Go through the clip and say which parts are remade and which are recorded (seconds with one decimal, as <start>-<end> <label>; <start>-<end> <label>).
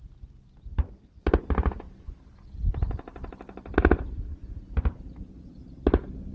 0.0-6.3 recorded